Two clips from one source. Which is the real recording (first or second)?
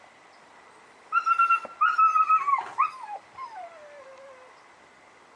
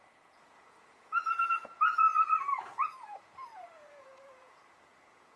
first